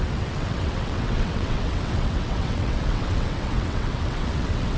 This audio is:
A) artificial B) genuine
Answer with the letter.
A